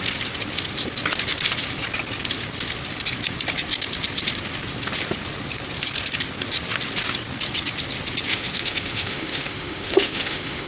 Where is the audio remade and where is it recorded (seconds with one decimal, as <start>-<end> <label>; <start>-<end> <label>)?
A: 0.0-8.3 recorded; 8.3-10.7 remade